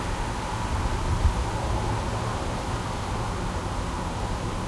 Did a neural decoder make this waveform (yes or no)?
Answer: no